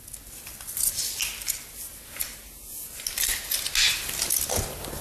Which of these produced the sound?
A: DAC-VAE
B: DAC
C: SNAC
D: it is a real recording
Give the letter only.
D